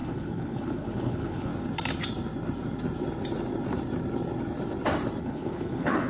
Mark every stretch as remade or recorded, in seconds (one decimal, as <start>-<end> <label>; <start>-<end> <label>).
0.0-1.5 remade; 1.5-5.2 recorded; 5.2-6.1 remade